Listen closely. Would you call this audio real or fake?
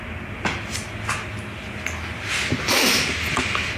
real